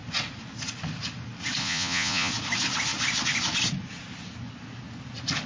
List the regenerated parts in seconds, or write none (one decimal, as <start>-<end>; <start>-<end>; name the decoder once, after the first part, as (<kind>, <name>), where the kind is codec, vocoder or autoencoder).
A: 1.6-2.3 (vocoder, Vocos)